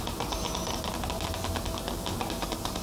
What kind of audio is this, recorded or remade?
recorded